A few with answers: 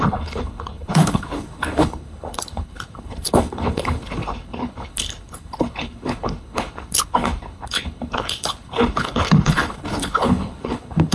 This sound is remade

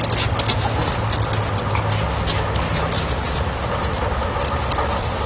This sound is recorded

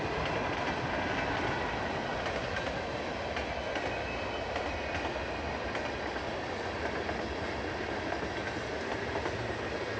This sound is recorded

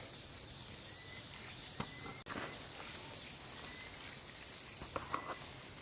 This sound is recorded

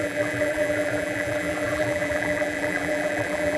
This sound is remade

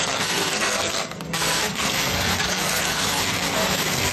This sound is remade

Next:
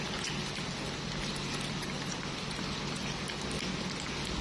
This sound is recorded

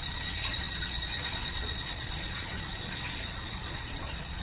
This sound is remade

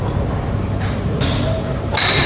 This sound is recorded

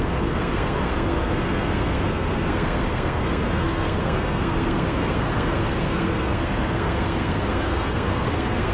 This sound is remade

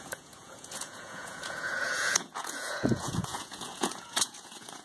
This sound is remade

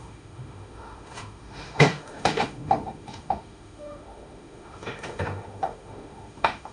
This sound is remade